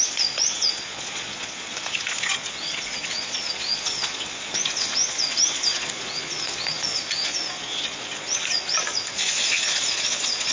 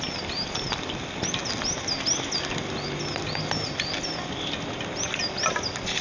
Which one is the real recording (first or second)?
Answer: second